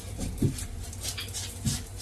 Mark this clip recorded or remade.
recorded